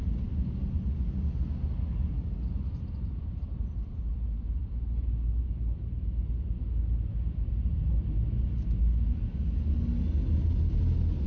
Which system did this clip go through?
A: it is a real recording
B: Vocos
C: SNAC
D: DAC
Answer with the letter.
A